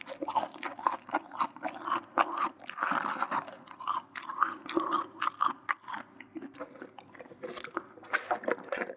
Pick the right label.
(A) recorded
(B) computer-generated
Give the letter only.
A